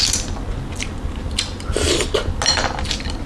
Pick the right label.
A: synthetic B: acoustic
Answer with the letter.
B